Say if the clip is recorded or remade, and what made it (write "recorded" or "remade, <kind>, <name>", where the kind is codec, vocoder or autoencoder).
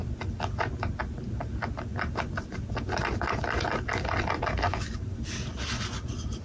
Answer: recorded